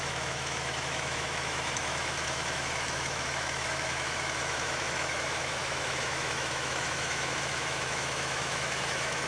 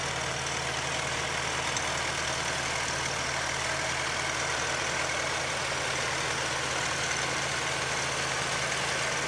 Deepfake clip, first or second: first